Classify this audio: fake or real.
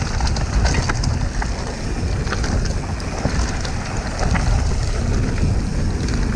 real